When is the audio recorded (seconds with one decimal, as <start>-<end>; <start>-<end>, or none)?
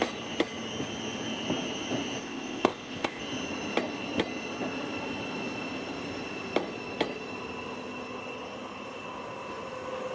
0.0-2.2; 3.2-10.1